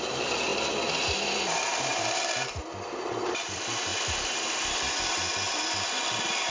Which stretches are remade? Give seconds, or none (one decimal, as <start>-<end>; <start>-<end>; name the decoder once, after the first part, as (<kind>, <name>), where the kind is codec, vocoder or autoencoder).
0.0-0.5 (vocoder, BigVGAN v2); 1.6-6.5